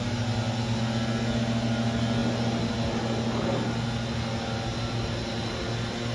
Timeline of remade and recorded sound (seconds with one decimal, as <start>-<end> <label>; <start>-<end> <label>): 0.0-6.1 recorded

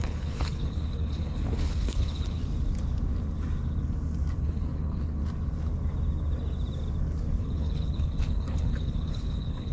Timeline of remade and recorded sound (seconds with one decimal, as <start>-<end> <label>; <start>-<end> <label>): 0.0-2.4 remade; 2.4-4.4 recorded; 4.4-5.2 remade; 5.2-7.4 recorded; 7.4-9.7 remade

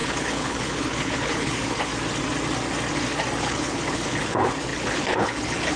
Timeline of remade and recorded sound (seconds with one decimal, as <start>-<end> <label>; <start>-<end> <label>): 0.0-1.9 remade; 1.9-3.4 recorded; 3.4-5.8 remade

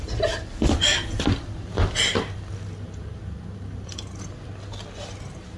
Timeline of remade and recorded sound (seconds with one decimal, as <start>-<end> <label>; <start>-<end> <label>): 0.0-5.6 recorded